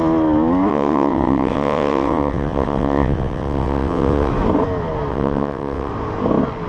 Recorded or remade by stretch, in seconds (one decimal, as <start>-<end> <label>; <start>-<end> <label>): 0.0-0.7 recorded; 0.7-4.3 remade; 4.3-5.1 recorded; 5.1-5.9 remade; 5.9-6.7 recorded